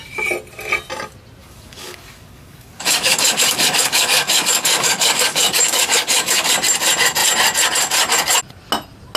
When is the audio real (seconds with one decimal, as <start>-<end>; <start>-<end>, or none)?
0.0-1.4; 6.5-9.2